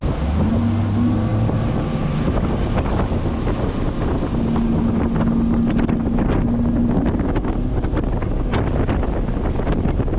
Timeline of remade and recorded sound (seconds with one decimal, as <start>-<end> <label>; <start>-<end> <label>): 0.0-10.2 recorded